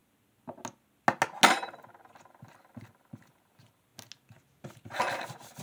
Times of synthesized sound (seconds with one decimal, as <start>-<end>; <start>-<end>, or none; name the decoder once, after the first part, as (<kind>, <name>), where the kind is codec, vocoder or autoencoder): 2.3-3.9 (vocoder, BigVGAN v2); 5.1-5.6